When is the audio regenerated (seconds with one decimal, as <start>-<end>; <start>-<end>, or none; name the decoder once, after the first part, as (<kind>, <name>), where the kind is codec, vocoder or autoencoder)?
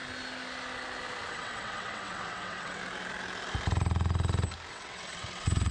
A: 1.3-2.8 (vocoder, WaveNeXt); 4.7-5.7